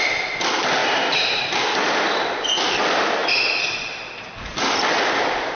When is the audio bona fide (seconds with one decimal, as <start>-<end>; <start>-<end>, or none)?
0.0-0.8; 2.6-5.5